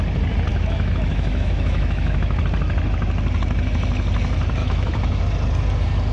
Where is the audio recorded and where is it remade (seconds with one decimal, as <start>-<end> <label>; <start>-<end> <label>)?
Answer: 0.0-0.5 recorded; 0.5-2.4 remade; 2.4-4.6 recorded; 4.6-5.2 remade; 5.2-6.1 recorded